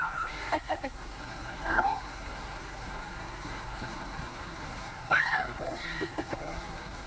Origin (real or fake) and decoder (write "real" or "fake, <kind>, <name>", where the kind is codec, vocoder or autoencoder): fake, codec, SNAC